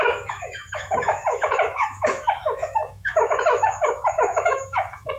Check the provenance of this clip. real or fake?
fake